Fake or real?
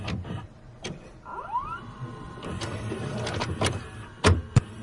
fake